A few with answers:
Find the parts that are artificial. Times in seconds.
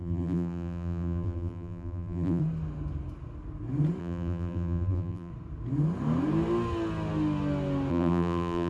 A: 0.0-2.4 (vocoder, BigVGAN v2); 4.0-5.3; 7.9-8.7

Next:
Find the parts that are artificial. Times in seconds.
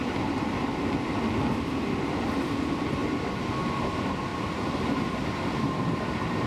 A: 2.6-3.0 (vocoder, BigVGAN v2); 3.8-6.5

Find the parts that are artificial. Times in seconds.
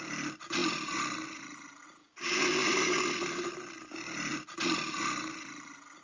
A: 0.6-1.8 (vocoder, BigVGAN v2); 2.6-3.5; 4.3-6.0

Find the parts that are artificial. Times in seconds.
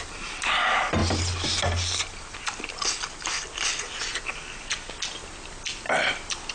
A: none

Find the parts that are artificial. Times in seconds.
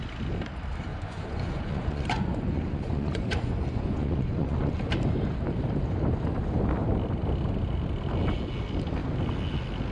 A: 0.9-4.7 (vocoder, Vocos)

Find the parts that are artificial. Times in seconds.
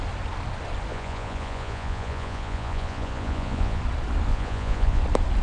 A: 0.9-3.8 (vocoder, Vocos); 4.3-5.0